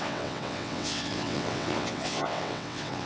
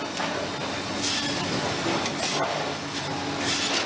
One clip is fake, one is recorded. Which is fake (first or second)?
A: first